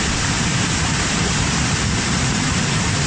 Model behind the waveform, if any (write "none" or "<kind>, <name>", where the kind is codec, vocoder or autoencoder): none